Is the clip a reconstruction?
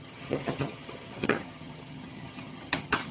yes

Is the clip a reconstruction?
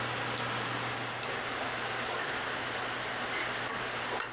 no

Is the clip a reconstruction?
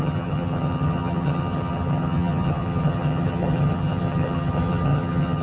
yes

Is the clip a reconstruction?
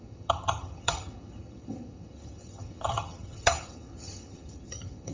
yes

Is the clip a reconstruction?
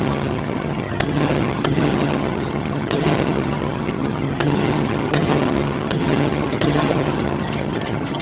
yes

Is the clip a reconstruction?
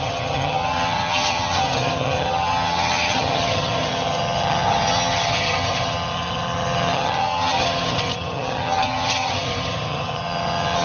yes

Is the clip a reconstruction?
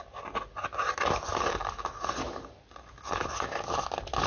no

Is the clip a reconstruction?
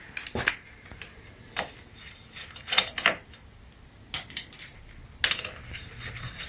no